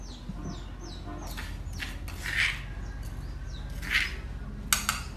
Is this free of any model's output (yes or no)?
yes